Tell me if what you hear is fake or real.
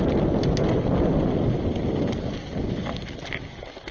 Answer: real